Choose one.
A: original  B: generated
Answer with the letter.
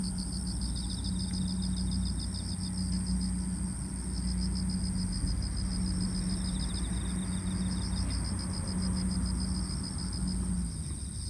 A